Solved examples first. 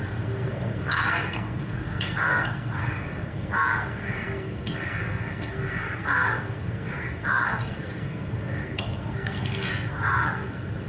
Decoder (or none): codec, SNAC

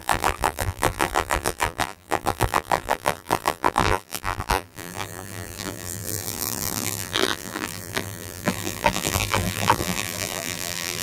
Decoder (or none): vocoder, BigVGAN v2